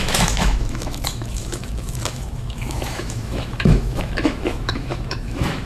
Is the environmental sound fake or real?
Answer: fake